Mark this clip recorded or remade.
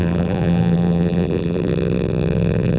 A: remade